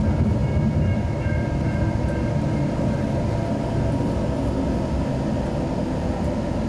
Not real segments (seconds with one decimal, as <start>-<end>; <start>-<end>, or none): none